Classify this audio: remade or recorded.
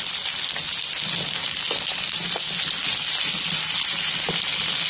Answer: recorded